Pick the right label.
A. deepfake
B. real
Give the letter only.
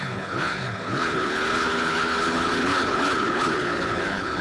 A